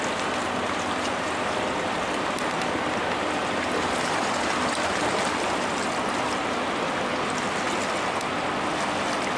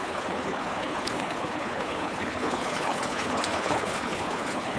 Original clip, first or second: first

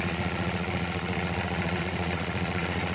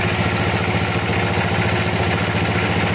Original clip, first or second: second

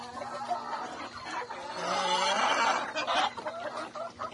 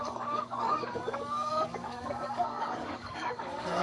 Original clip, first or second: first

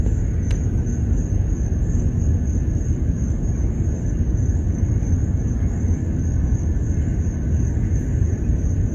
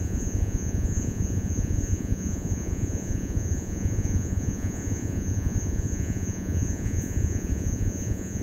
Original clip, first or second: first